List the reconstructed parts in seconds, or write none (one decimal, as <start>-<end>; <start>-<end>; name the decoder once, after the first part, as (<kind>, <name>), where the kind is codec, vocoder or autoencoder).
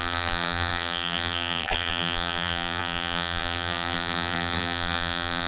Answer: 0.0-5.5 (vocoder, BigVGAN v2)